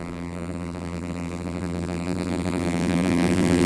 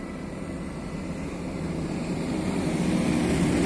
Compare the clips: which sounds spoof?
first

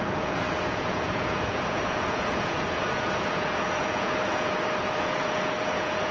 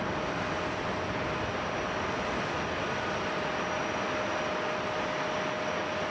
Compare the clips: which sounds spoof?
first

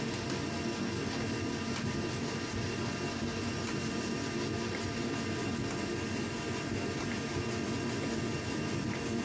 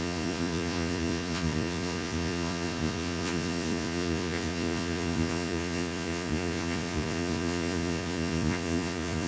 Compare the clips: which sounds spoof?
second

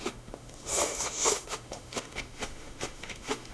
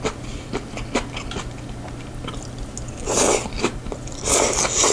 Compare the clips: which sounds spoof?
first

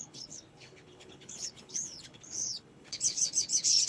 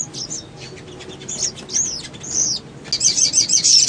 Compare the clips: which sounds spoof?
first